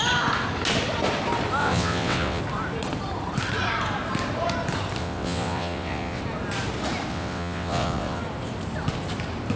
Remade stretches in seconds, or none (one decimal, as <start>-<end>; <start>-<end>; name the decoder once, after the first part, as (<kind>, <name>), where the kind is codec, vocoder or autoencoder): 1.6-2.4 (vocoder, WaveNeXt); 5.0-6.2; 7.1-8.2